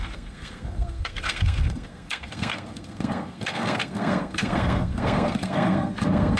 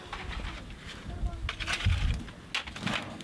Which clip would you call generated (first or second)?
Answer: first